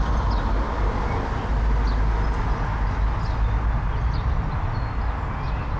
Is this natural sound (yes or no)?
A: yes